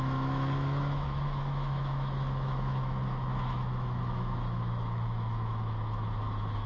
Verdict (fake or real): fake